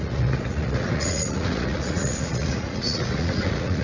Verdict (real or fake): fake